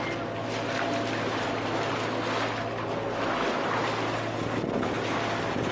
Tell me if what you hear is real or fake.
real